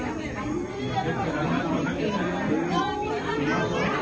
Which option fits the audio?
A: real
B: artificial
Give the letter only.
A